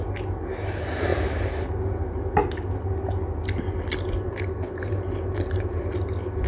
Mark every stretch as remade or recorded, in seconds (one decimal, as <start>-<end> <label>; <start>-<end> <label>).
0.0-6.5 recorded